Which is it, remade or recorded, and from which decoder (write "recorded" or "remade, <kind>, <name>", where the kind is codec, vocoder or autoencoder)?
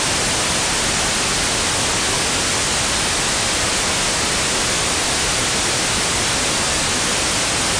recorded